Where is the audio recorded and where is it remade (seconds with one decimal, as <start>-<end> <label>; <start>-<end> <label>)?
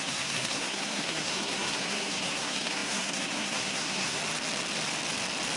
0.0-4.2 remade; 4.2-5.6 recorded